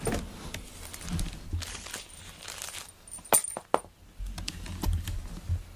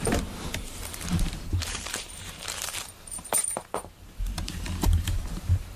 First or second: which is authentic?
first